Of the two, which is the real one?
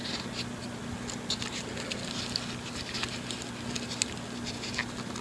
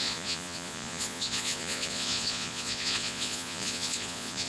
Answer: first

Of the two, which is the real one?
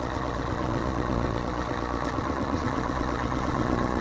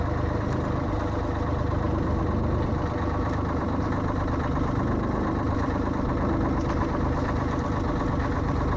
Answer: second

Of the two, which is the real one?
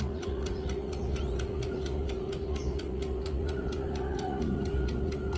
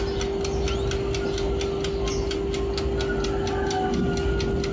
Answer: second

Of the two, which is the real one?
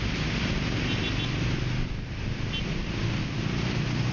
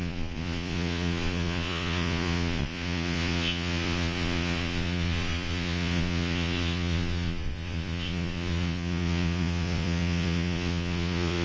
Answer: first